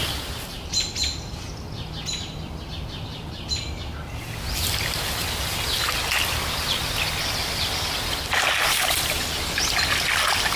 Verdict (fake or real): real